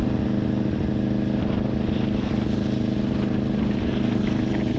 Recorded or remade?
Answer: recorded